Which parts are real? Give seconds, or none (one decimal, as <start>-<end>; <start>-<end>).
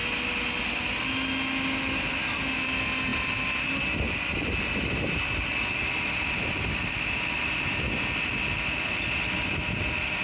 0.0-10.2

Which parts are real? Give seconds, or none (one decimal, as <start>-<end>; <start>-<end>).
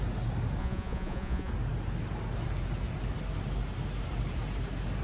0.0-0.6; 1.5-5.0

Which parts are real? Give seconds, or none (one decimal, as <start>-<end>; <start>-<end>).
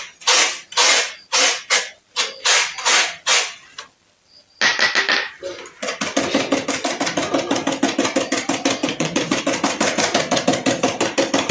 0.0-8.8; 9.4-11.5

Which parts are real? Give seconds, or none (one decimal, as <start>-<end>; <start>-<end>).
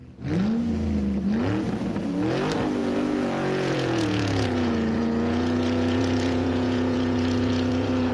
0.0-2.8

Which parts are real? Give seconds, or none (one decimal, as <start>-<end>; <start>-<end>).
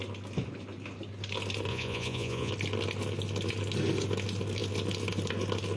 0.0-1.7; 2.5-5.8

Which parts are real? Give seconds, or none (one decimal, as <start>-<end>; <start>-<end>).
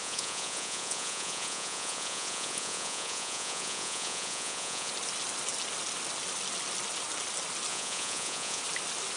4.9-7.7; 8.6-9.2